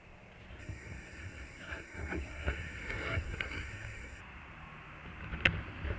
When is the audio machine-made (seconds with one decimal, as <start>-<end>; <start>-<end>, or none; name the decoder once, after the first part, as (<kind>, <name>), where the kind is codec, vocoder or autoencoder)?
0.6-4.2 (codec, SNAC)